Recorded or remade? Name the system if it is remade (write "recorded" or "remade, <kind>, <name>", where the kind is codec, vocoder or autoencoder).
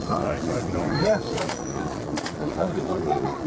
remade, vocoder, Vocos